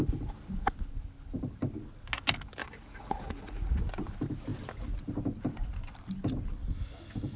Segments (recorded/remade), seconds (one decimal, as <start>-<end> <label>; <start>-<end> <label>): 0.0-2.6 recorded; 2.6-3.8 remade; 3.8-7.4 recorded